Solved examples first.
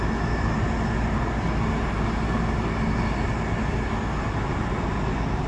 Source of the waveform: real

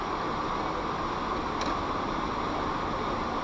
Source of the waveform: real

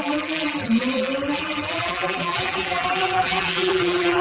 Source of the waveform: fake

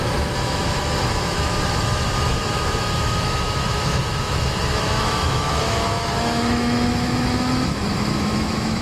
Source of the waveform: fake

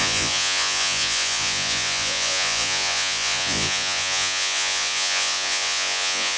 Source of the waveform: fake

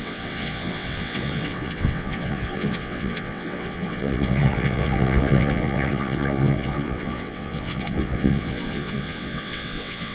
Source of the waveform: fake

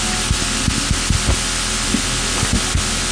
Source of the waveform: real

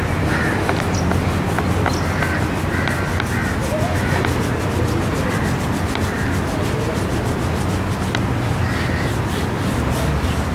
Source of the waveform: real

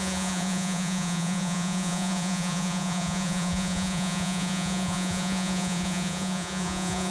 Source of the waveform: fake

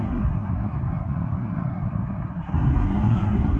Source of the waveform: fake